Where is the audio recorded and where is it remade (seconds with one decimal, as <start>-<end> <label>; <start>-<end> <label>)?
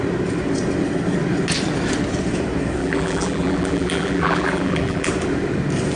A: 0.0-2.8 recorded; 2.8-5.1 remade; 5.1-6.0 recorded